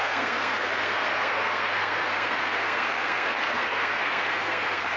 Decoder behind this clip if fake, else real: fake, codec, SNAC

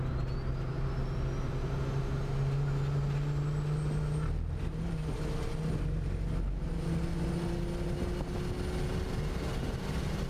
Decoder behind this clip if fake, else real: real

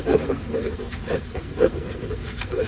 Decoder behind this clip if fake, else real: fake, codec, SNAC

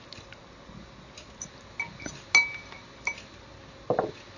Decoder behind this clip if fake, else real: real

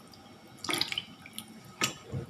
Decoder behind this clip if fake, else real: real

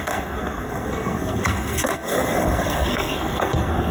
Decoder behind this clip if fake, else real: fake, codec, SNAC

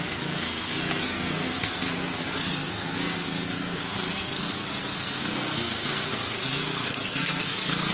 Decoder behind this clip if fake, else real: fake, codec, SNAC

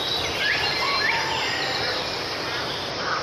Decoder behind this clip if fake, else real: real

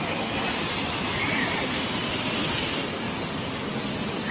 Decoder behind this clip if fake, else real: real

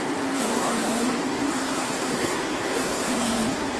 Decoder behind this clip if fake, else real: fake, codec, SNAC